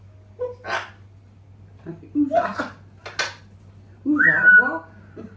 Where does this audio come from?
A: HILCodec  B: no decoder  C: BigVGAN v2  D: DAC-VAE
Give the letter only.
B